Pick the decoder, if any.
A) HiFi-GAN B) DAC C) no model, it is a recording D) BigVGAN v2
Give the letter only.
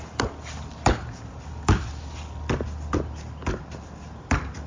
C